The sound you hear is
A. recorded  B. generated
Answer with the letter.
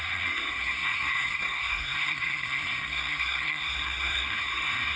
B